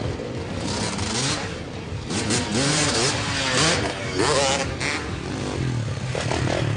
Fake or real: real